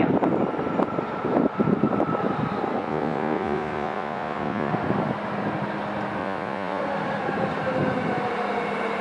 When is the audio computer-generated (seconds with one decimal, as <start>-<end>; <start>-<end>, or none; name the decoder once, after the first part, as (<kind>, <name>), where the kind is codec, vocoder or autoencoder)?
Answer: 2.8-4.7 (vocoder, Vocos); 6.2-6.8